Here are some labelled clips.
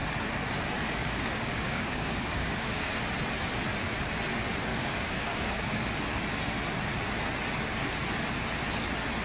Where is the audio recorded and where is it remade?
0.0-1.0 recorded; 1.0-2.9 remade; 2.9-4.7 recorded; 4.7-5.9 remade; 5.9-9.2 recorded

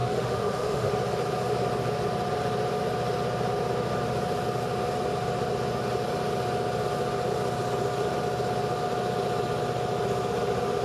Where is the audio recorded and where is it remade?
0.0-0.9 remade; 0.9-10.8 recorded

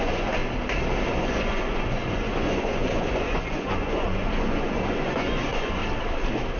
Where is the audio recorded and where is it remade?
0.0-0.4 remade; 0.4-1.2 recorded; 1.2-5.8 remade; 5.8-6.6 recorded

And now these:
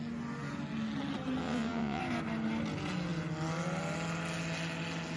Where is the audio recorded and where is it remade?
0.0-1.4 recorded; 1.4-2.0 remade; 2.0-5.2 recorded

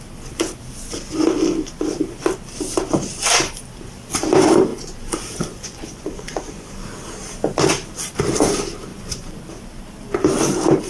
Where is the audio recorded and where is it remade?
0.0-4.7 recorded; 4.7-6.7 remade; 6.7-8.9 recorded; 8.9-9.4 remade; 9.4-10.9 recorded